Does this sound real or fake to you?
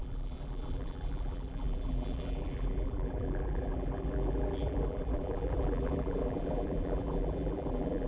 fake